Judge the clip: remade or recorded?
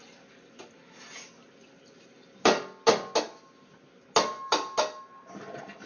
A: recorded